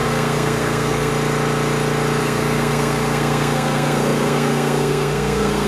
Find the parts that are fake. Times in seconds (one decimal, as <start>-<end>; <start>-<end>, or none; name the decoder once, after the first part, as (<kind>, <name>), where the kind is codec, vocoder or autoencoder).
0.0-1.1 (codec, SNAC); 2.2-5.7